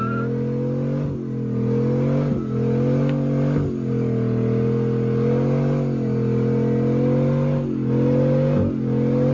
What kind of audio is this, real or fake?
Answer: real